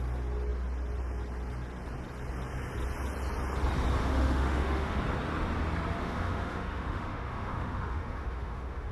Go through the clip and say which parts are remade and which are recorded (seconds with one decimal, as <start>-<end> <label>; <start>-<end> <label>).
0.0-4.0 recorded; 4.0-5.0 remade; 5.0-6.0 recorded; 6.0-8.9 remade